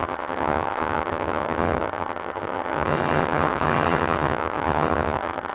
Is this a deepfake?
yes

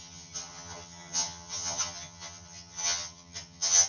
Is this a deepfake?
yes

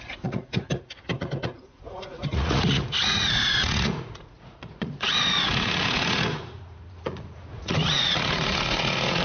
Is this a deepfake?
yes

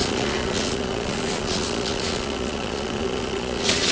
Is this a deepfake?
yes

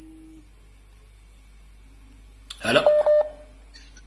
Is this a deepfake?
no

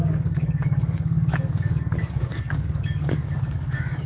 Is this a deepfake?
yes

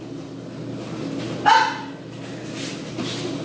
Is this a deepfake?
no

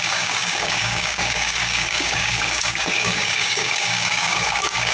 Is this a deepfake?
yes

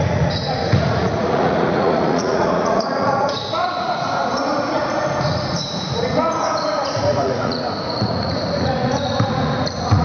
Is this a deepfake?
yes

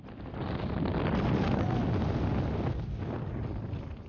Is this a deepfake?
no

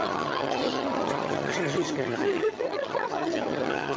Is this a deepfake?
yes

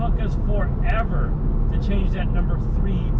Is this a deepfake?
no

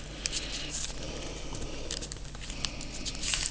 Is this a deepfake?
no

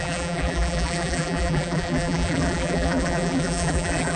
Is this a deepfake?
yes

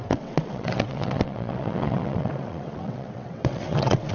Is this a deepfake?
yes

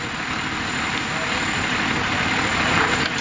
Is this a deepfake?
no